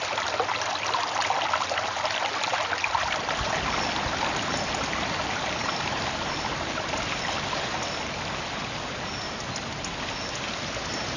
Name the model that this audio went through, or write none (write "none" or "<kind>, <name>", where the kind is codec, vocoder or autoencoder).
none